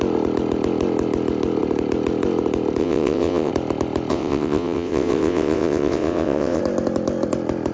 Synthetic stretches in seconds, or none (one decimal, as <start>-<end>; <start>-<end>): 2.8-3.5; 4.1-6.6